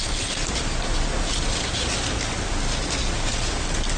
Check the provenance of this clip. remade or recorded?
recorded